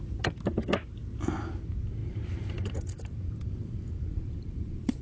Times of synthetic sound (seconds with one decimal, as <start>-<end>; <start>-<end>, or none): 2.0-5.0